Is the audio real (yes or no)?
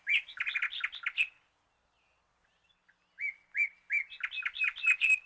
yes